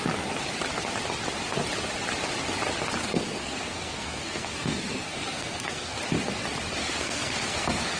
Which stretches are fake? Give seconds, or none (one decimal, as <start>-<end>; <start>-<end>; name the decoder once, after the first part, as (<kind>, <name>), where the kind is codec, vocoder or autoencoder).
3.0-6.0 (codec, SNAC); 6.8-8.0